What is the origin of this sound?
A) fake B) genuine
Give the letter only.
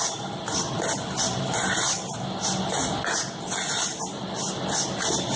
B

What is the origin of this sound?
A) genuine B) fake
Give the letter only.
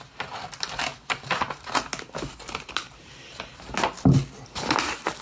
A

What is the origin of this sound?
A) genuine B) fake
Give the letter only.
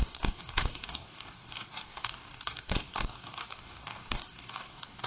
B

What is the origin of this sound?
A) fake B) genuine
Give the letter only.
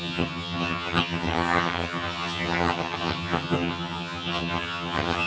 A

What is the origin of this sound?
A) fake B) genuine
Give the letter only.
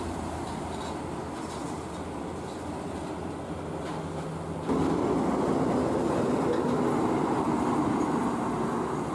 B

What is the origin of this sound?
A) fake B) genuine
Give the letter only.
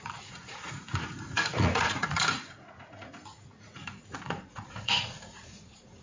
A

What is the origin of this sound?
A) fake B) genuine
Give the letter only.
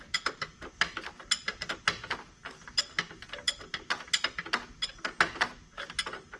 B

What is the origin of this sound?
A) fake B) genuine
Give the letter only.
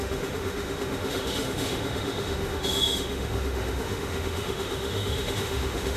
A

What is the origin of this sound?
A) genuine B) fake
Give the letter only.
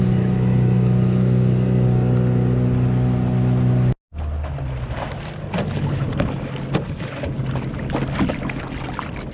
A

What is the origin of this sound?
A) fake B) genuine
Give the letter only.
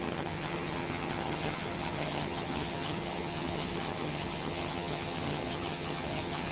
A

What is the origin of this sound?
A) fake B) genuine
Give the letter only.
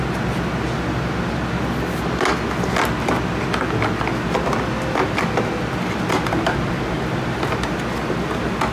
B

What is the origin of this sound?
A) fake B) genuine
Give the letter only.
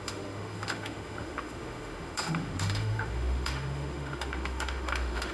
A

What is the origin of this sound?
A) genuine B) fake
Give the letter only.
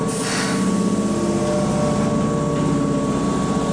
A